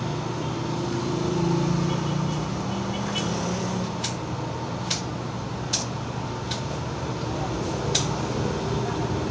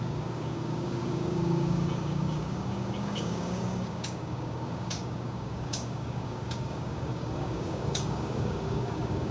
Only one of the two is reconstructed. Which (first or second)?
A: second